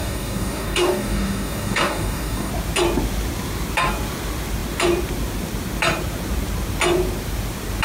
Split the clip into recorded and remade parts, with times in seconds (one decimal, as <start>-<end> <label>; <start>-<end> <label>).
0.0-2.5 remade; 2.5-7.8 recorded